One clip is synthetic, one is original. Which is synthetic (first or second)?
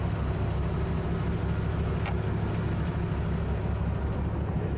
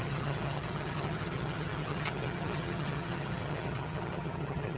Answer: second